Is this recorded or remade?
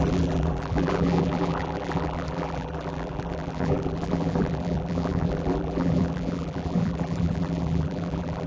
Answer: remade